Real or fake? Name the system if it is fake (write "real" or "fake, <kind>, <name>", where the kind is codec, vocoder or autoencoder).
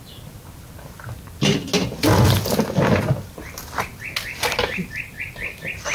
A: real